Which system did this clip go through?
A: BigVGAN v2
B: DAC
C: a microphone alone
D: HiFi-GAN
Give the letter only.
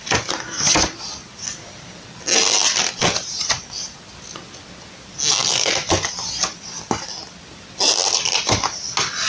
C